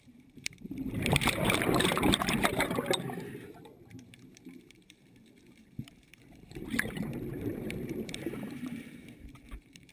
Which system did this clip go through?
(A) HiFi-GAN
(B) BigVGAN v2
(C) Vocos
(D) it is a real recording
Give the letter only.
B